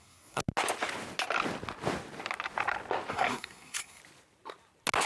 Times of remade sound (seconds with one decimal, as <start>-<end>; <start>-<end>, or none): 0.0-0.4; 3.1-4.0